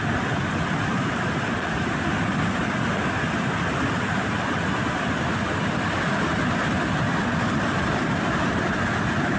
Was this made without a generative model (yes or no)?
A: yes